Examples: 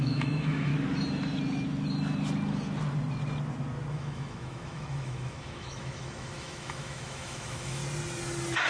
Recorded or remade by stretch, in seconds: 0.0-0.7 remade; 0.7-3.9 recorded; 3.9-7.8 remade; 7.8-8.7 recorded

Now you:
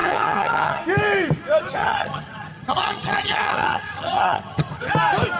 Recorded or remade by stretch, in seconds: 0.0-0.8 remade; 0.8-1.8 recorded; 1.8-4.9 remade; 4.9-5.4 recorded

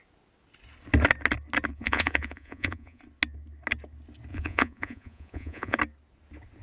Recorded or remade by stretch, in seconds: 0.0-1.7 recorded; 1.7-3.0 remade; 3.0-4.3 recorded; 4.3-5.8 remade; 5.8-6.6 recorded

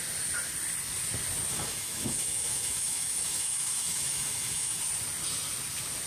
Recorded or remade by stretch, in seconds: 0.0-1.5 recorded; 1.5-4.8 remade; 4.8-6.1 recorded

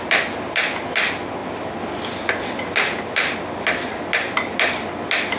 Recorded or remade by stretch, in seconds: 0.0-5.4 recorded

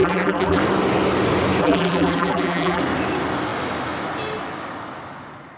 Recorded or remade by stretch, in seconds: 0.0-0.6 remade; 0.6-1.6 recorded; 1.6-2.8 remade; 2.8-5.6 recorded

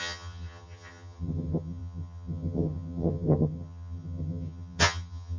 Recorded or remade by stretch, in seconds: 0.0-5.4 remade